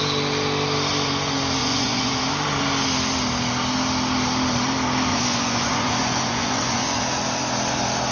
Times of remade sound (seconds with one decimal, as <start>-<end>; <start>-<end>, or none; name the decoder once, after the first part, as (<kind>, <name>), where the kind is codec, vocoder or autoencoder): 1.6-2.1 (vocoder, Vocos); 5.1-7.0

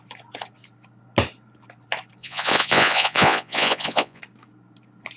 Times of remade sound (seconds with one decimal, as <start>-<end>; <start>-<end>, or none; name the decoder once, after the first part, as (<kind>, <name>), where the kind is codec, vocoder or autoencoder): 2.2-4.2 (vocoder, Vocos)

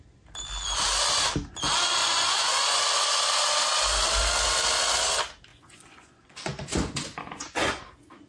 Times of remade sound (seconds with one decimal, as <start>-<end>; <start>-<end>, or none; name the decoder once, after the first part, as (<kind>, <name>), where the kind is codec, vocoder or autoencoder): 2.0-2.8 (vocoder, Vocos); 5.5-7.8

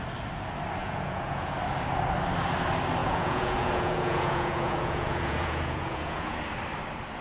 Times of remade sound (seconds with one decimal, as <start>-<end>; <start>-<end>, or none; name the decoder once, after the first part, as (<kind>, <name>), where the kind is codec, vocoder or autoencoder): 0.8-1.5 (vocoder, Vocos); 3.0-6.4